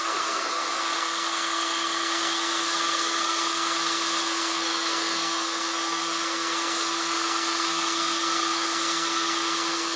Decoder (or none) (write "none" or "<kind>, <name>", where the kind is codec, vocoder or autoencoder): codec, SNAC